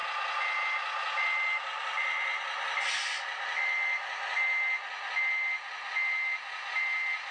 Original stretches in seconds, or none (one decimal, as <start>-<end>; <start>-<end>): 0.0-7.3

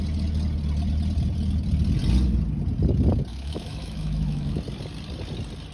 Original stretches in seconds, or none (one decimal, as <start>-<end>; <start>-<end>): 0.0-3.3; 4.6-5.7

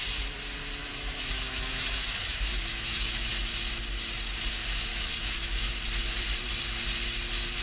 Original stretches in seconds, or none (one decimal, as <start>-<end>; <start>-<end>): 0.0-0.8; 3.3-4.9; 5.7-7.6

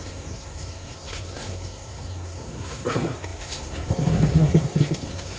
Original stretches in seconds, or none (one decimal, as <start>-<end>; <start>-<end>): none

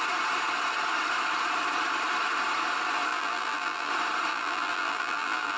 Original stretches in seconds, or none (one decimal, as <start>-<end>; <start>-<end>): 0.0-3.1; 3.9-4.3